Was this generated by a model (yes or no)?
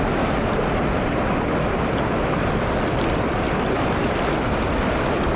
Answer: no